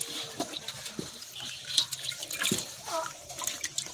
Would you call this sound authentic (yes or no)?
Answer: no